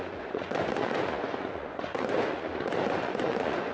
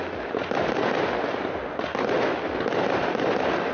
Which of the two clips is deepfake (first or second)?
first